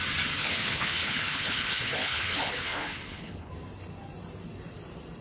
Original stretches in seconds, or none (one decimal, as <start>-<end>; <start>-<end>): 0.0-0.4; 3.5-5.2